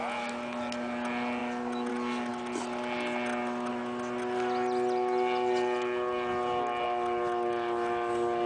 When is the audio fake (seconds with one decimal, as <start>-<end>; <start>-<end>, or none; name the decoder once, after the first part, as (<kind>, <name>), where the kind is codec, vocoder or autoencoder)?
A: none